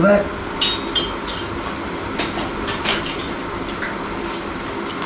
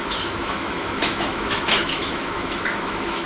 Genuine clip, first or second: first